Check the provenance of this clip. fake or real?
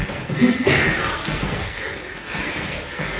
fake